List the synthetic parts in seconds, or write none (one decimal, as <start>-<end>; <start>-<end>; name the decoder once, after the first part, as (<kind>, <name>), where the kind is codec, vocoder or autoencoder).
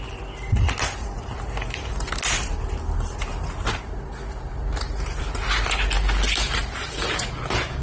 1.0-2.1 (vocoder, BigVGAN v2); 4.5-5.2; 6.6-7.2